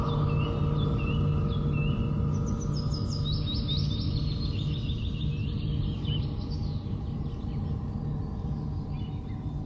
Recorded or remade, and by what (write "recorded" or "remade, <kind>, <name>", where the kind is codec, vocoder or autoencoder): recorded